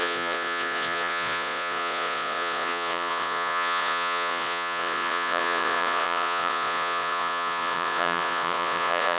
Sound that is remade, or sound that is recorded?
remade